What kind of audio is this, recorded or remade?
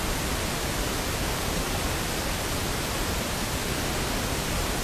recorded